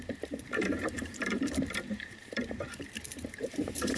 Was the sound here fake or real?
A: fake